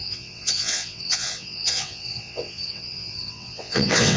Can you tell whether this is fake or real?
fake